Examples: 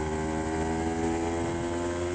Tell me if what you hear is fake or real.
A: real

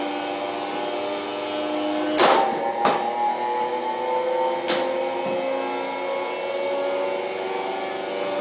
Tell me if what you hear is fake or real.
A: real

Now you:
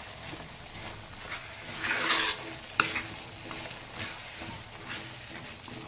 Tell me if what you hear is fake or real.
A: real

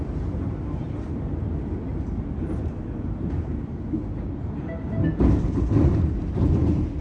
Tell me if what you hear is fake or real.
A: real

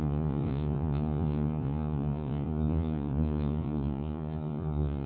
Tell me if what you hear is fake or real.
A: fake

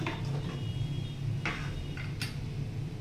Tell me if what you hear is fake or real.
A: real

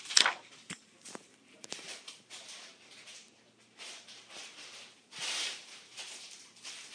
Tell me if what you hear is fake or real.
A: fake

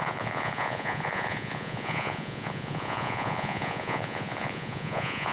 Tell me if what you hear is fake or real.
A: fake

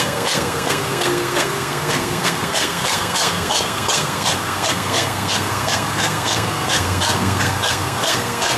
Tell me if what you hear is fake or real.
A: fake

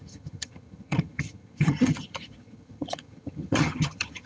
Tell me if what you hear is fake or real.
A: fake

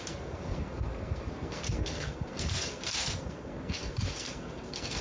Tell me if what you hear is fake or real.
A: fake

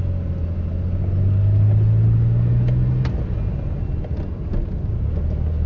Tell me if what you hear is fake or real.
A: real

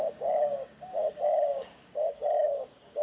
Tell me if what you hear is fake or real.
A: fake